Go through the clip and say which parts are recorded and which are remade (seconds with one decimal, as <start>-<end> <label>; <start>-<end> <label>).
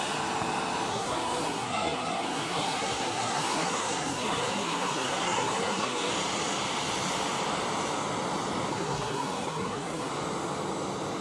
0.0-0.9 recorded; 0.9-6.1 remade; 6.1-8.7 recorded; 8.7-10.1 remade; 10.1-11.2 recorded